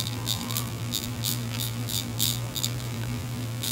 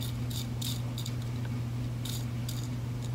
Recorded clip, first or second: second